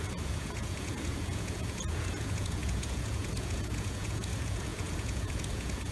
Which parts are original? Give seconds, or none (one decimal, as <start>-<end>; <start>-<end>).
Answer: none